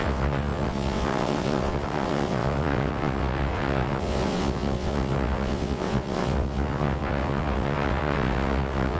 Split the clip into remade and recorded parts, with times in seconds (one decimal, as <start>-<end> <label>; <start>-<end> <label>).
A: 0.0-9.0 remade